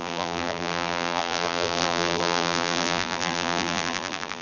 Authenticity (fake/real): fake